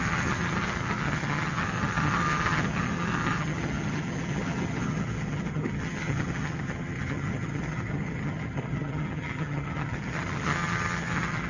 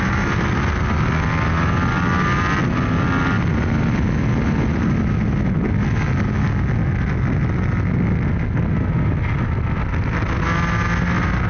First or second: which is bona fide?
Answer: second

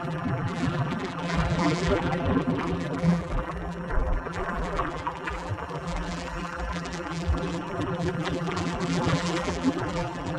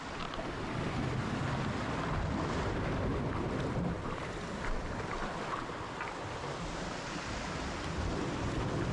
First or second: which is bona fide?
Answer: second